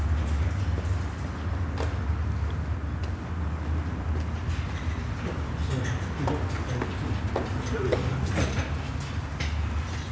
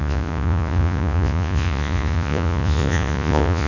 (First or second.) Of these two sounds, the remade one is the second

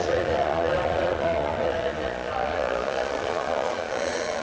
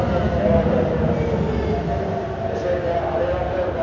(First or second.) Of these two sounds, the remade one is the first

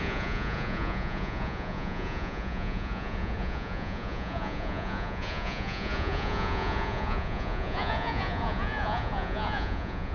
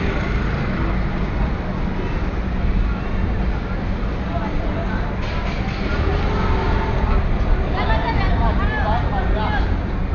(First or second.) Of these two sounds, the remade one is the first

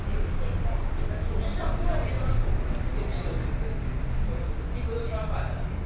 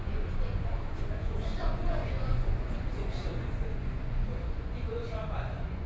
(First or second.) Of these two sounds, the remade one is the second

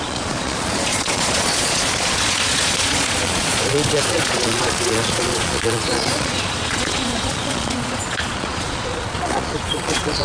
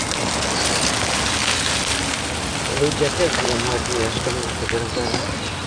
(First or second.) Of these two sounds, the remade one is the first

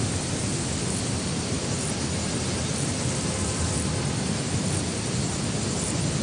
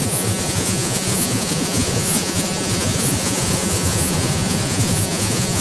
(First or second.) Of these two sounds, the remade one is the second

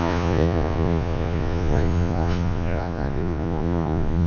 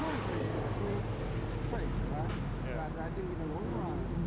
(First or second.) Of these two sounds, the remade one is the first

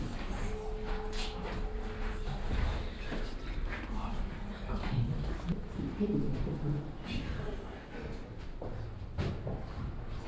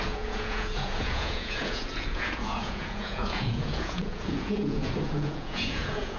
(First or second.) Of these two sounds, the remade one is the second